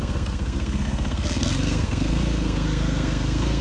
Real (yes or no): no